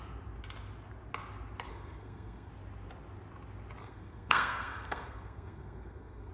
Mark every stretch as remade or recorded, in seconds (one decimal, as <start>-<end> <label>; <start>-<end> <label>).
0.0-1.7 recorded; 1.7-2.5 remade; 2.5-3.8 recorded; 3.8-6.3 remade